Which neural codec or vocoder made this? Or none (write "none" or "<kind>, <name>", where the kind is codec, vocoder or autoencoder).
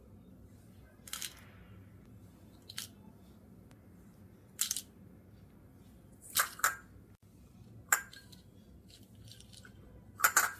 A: none